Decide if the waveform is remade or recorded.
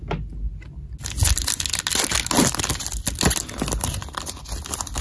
recorded